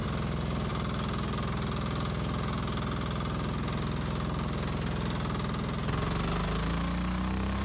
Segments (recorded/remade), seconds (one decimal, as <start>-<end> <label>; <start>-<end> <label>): 0.0-7.6 recorded